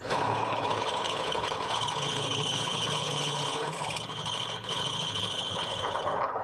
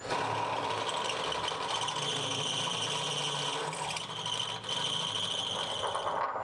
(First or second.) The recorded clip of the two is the second